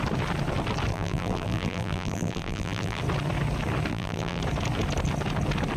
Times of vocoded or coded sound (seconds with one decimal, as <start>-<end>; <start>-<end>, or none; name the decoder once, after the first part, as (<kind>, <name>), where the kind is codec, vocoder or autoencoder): 0.9-3.0 (vocoder, BigVGAN v2); 3.9-4.4